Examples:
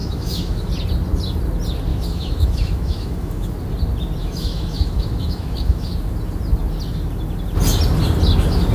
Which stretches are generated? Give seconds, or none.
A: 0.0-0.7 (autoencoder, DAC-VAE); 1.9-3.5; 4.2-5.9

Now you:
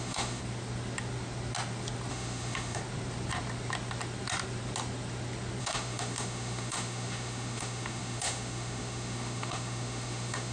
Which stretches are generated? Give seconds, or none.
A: 0.0-0.4 (autoencoder, DAC-VAE); 2.1-2.8; 5.6-10.5

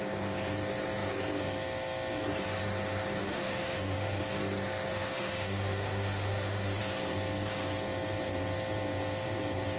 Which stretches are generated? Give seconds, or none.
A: 3.2-4.2 (autoencoder, DAC-VAE); 4.9-6.8